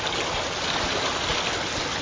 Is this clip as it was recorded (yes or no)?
no